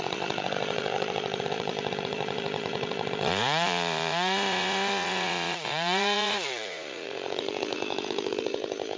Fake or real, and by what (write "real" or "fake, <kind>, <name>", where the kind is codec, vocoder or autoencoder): fake, vocoder, Vocos